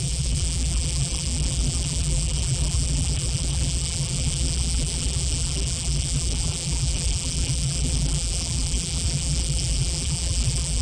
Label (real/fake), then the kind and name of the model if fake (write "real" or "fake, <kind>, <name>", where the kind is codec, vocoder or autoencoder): fake, vocoder, BigVGAN v2